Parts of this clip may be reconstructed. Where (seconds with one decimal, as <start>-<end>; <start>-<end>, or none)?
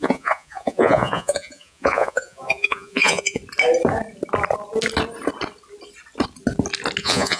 0.0-3.4; 7.0-7.4